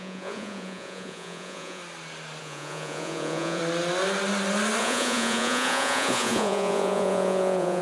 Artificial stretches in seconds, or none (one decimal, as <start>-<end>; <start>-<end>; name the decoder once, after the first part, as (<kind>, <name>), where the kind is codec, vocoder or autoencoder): 0.0-1.8 (vocoder, Vocos); 2.4-3.6; 4.8-7.8